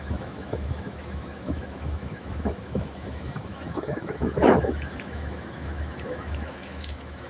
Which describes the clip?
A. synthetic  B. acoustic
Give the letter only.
A